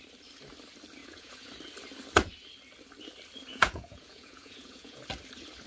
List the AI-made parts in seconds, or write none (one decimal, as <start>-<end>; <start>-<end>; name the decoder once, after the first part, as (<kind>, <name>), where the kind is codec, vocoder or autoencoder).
1.0-1.5 (vocoder, Vocos); 3.5-5.0